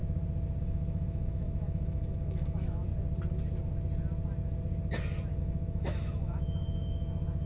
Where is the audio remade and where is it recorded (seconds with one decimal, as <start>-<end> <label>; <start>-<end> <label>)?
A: 0.0-0.6 recorded; 0.6-2.9 remade; 2.9-5.4 recorded; 5.4-7.5 remade